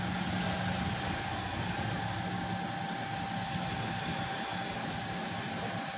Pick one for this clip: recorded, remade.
recorded